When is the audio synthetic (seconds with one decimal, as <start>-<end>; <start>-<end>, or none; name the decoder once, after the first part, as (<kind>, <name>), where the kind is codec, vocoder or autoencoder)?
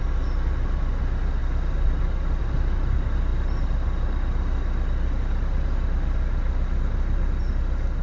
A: none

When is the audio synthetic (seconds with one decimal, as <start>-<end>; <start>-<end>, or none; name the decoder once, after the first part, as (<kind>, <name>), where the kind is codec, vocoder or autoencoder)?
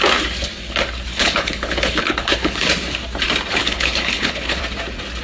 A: 1.1-2.7 (codec, HILCodec); 3.6-4.6